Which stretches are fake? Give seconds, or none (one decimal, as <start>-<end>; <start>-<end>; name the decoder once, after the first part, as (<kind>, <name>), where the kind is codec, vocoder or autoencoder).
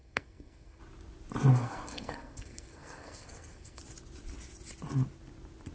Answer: 0.0-0.8 (codec, SNAC); 1.5-3.8